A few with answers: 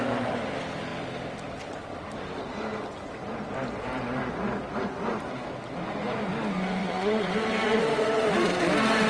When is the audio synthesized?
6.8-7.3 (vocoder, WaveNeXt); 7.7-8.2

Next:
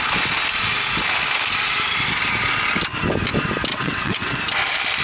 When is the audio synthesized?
3.7-4.4 (vocoder, WaveNeXt)

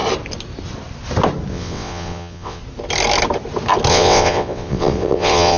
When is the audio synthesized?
1.5-2.6 (vocoder, WaveNeXt); 3.9-5.6

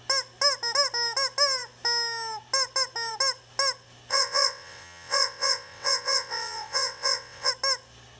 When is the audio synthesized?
4.1-7.5 (vocoder, WaveNeXt)

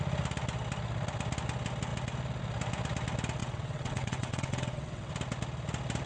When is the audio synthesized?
3.4-5.1 (vocoder, WaveNeXt)

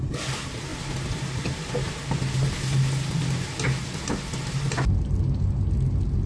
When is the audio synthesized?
none

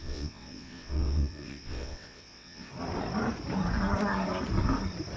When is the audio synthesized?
0.0-2.7 (vocoder, WaveNeXt)

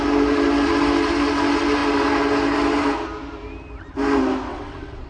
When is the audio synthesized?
4.5-5.1 (vocoder, WaveNeXt)